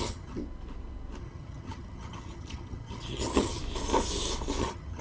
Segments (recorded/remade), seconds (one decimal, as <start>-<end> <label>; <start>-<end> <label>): 0.0-0.4 remade; 0.4-1.2 recorded; 1.2-3.6 remade; 3.6-4.6 recorded; 4.6-5.0 remade